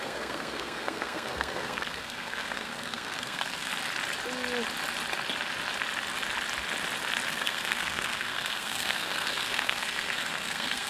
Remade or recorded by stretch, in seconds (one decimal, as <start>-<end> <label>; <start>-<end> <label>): 0.0-3.7 remade; 3.7-7.3 recorded; 7.3-10.9 remade